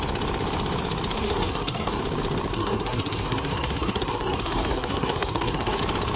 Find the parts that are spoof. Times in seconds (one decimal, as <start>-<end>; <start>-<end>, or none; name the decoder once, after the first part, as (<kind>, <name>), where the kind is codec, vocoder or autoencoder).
1.1-2.0 (codec, SNAC); 2.5-5.8